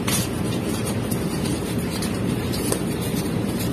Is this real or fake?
fake